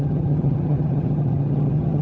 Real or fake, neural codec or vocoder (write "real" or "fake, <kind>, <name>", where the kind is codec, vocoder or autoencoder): fake, vocoder, HiFi-GAN